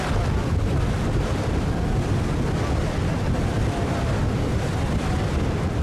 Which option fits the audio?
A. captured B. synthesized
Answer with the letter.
A